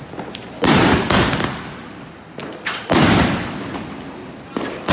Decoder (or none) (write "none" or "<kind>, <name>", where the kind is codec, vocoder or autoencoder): none